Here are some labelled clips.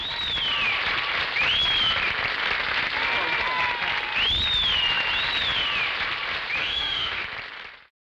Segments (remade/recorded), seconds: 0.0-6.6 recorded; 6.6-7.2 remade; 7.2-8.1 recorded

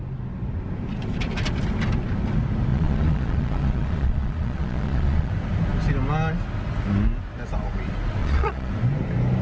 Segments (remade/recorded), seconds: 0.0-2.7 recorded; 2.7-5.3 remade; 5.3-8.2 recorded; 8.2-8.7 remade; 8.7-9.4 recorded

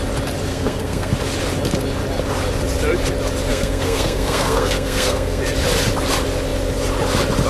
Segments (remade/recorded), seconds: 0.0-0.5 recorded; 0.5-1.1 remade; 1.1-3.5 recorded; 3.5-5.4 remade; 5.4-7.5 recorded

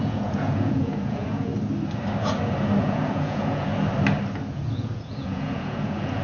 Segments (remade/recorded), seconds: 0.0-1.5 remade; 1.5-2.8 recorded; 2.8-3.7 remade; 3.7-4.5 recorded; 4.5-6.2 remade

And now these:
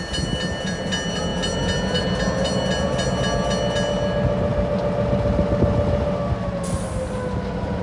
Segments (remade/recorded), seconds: 0.0-7.8 recorded

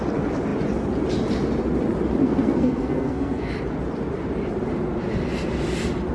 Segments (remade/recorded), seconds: 0.0-2.2 recorded; 2.2-3.5 remade; 3.5-6.1 recorded